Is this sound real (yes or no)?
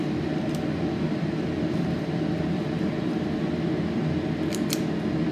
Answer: yes